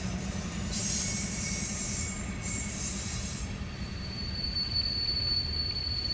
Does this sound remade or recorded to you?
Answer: remade